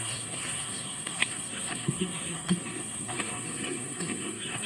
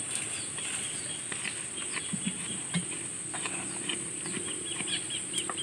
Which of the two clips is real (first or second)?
second